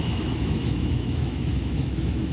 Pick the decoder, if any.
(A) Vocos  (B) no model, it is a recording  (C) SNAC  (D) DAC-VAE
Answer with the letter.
D